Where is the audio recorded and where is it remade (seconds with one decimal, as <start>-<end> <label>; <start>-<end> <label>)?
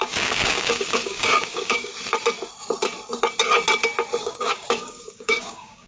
0.0-1.9 remade; 1.9-4.2 recorded; 4.2-5.9 remade